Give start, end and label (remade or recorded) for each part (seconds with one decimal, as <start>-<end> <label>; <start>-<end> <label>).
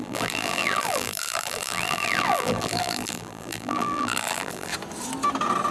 0.0-4.7 remade; 4.7-5.7 recorded